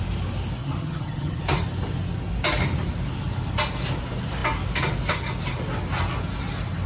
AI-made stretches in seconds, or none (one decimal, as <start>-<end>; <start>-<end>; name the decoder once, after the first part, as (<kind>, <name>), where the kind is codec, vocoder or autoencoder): 0.6-1.4 (vocoder, HiFi-GAN)